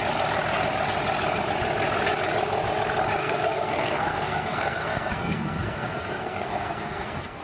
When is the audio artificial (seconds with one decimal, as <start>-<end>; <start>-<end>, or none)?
3.2-7.4